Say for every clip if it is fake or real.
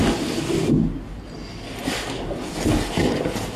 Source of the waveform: real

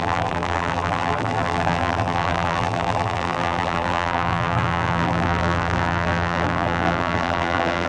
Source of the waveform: fake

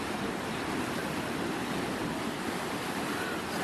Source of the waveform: fake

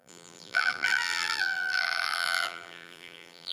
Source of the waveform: fake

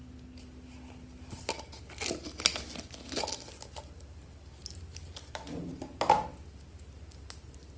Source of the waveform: real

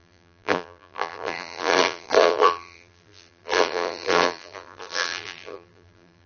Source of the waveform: fake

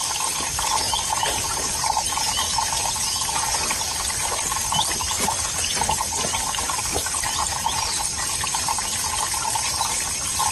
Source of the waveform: real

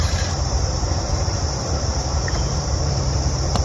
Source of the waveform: fake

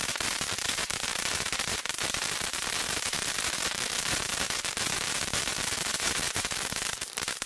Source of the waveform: fake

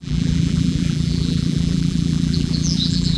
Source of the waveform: fake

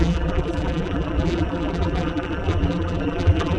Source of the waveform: fake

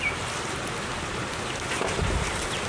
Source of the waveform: real